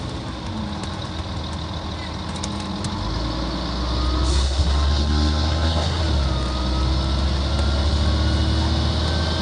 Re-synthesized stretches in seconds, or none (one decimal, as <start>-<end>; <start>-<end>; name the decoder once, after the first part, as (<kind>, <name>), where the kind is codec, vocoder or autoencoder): 4.3-6.0 (codec, SNAC)